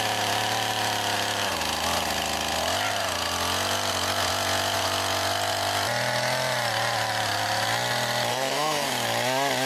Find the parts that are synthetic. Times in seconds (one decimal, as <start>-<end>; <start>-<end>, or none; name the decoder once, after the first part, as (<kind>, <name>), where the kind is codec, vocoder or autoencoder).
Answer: 8.3-8.9 (codec, SNAC)